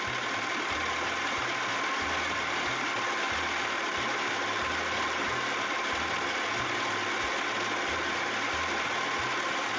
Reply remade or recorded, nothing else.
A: recorded